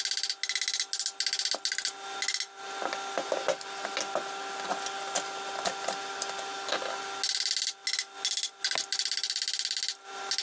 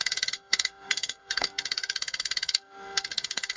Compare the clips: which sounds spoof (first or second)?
second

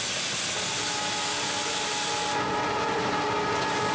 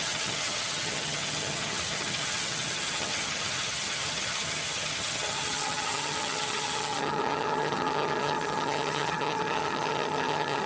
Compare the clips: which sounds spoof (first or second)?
second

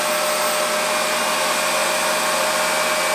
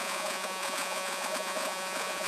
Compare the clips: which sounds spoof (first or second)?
second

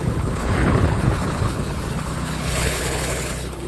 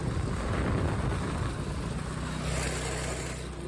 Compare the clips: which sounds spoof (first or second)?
first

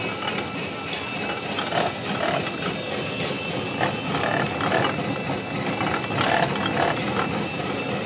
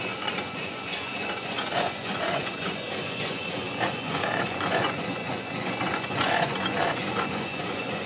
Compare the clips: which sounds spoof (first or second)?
second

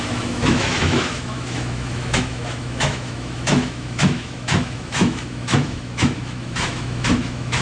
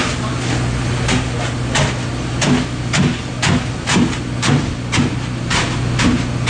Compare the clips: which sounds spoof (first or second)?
first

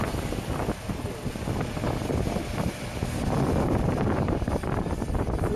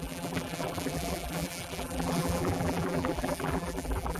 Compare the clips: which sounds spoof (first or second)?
second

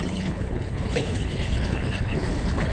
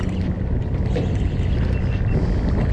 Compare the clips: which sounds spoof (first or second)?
first